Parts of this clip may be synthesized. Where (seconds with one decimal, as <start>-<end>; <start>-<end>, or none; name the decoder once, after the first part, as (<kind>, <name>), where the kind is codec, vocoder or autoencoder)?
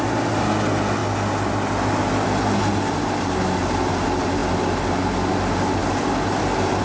none